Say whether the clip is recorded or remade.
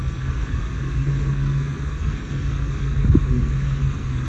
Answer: remade